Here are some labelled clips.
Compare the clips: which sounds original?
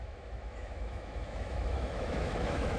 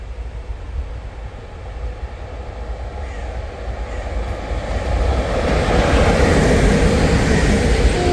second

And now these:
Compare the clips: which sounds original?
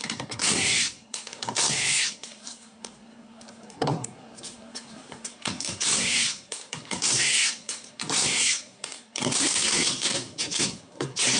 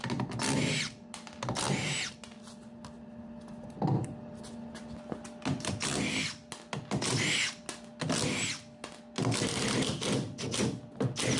second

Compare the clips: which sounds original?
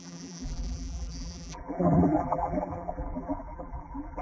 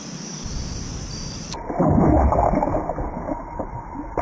second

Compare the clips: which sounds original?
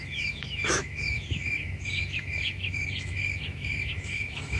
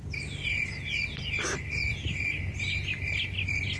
second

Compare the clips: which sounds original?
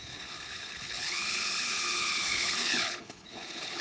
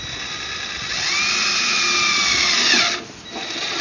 second